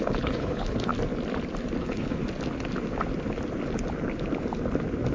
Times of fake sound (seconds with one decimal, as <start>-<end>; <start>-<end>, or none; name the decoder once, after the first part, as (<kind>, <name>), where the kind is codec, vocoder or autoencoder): 0.0-0.9 (codec, HILCodec); 1.8-2.2